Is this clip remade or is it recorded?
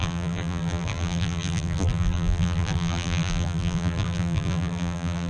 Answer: remade